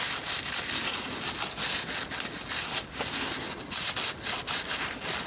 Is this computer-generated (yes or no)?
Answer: no